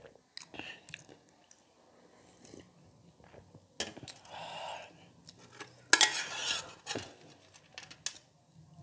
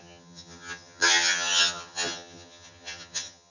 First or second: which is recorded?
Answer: first